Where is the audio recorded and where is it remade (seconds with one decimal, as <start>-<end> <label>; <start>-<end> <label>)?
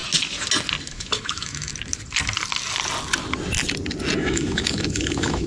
0.0-0.9 recorded; 0.9-1.7 remade; 1.7-4.2 recorded; 4.2-5.5 remade